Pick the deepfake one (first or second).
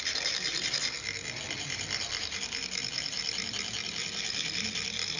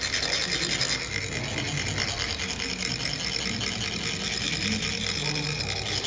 first